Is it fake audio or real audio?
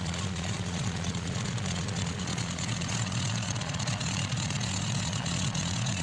fake